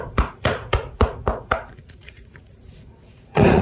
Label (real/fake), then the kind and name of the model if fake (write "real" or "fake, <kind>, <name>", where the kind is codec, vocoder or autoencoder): fake, vocoder, Vocos